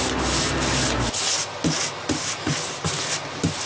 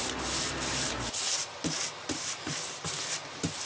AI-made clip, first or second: second